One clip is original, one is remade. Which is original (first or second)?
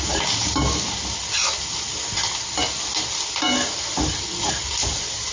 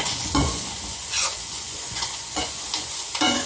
first